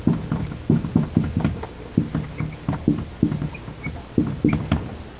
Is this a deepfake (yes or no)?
yes